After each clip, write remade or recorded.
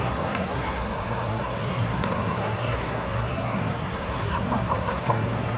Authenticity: remade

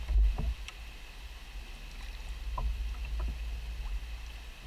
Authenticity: recorded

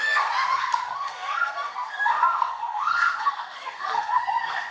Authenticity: remade